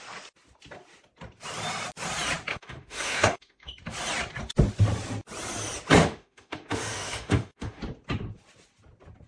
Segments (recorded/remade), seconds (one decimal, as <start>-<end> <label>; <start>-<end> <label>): 0.0-2.5 recorded; 2.5-3.7 remade; 3.7-6.0 recorded; 6.0-7.8 remade; 7.8-9.3 recorded